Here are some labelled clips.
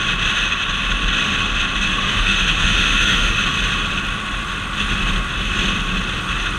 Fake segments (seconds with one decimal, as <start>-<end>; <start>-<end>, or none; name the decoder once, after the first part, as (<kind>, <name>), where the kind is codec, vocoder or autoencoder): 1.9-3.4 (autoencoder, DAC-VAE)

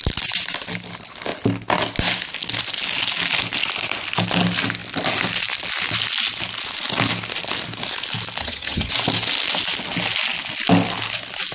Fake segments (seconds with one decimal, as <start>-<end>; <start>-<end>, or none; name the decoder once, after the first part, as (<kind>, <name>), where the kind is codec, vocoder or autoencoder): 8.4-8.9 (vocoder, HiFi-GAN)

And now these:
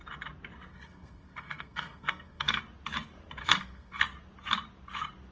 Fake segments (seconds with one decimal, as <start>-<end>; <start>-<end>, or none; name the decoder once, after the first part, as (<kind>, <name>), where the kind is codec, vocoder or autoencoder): 0.7-2.6 (codec, SNAC); 3.4-4.0

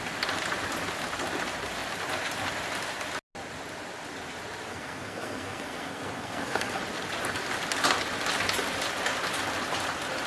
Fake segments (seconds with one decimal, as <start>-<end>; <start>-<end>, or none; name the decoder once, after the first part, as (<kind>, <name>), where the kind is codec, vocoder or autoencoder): 4.7-6.8 (codec, SNAC)

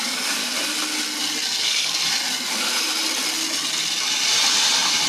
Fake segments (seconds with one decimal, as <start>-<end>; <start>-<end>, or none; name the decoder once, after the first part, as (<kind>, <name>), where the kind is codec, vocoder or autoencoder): 0.0-0.4 (codec, DAC); 1.6-2.0